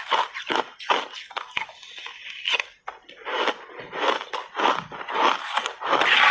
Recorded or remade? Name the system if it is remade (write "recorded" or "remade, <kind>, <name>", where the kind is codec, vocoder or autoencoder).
recorded